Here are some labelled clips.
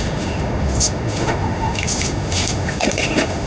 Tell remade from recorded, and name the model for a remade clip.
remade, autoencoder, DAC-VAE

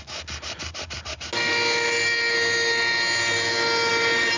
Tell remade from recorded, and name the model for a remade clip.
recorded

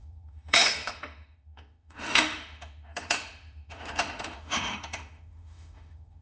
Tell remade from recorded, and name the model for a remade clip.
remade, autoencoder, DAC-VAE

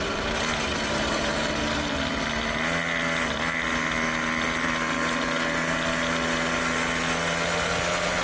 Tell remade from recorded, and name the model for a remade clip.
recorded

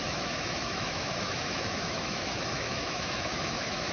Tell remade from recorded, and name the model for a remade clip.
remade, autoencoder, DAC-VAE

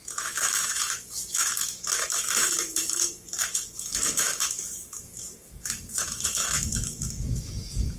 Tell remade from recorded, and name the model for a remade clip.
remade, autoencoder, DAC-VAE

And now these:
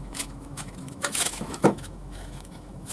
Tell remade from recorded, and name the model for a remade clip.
remade, autoencoder, DAC-VAE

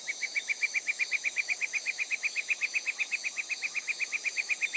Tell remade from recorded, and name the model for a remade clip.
remade, autoencoder, DAC-VAE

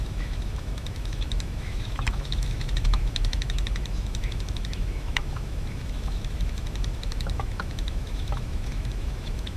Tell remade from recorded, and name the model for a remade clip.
remade, autoencoder, DAC-VAE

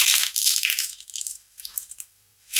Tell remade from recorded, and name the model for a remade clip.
remade, autoencoder, DAC-VAE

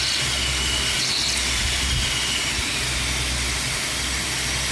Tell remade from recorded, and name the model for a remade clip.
recorded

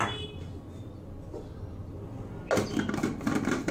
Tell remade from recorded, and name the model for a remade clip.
recorded